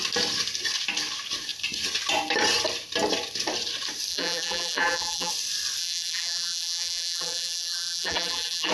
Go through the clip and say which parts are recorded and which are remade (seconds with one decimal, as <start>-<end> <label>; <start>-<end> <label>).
0.0-4.1 recorded; 4.1-5.3 remade; 5.3-5.8 recorded; 5.8-8.7 remade